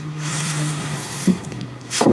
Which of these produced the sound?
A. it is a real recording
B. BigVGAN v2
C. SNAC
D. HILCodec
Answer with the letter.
C